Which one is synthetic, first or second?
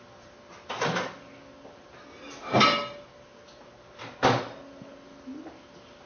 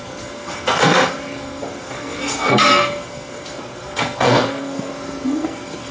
second